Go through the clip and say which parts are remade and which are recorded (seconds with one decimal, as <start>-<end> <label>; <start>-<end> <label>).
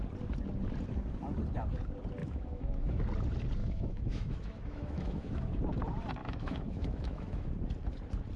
0.0-2.2 recorded; 2.2-3.0 remade; 3.0-3.6 recorded; 3.6-5.5 remade; 5.5-6.2 recorded; 6.2-7.5 remade; 7.5-8.4 recorded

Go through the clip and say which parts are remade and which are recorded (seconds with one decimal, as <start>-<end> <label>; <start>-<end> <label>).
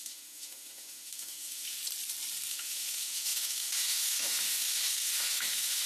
0.0-1.8 remade; 1.8-2.5 recorded; 2.5-5.9 remade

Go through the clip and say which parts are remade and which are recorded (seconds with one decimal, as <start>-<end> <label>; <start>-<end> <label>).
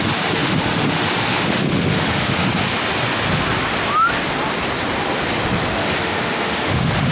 0.0-2.5 remade; 2.5-5.8 recorded; 5.8-7.1 remade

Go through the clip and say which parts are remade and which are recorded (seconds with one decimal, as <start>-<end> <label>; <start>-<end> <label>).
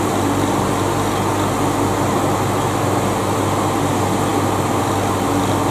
0.0-5.7 recorded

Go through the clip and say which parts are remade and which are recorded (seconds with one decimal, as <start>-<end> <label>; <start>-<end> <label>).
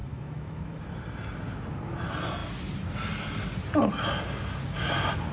0.0-0.9 remade; 0.9-5.3 recorded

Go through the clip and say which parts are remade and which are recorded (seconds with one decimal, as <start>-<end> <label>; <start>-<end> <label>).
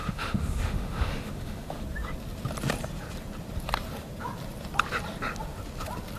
0.0-1.8 remade; 1.8-6.2 recorded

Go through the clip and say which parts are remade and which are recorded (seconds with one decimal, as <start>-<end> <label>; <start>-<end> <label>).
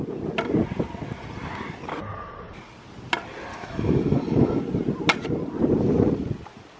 0.0-3.5 recorded; 3.5-4.6 remade; 4.6-6.8 recorded